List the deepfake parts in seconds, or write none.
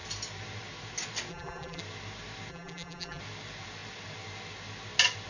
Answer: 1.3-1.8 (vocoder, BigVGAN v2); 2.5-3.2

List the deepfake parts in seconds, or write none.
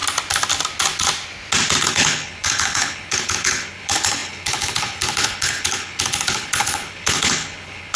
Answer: 1.8-8.0 (codec, HILCodec)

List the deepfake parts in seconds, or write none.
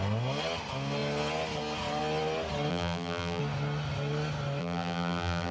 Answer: 2.7-3.4 (vocoder, BigVGAN v2); 4.6-5.5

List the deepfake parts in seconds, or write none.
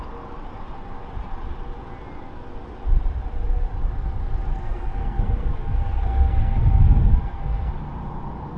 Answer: 4.5-7.7 (codec, SNAC)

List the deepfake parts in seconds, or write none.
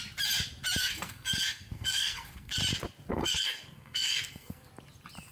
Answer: 0.8-2.6 (codec, SNAC); 3.1-4.7